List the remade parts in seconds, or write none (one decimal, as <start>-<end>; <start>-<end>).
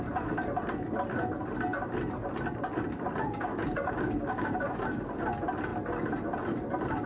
3.5-5.1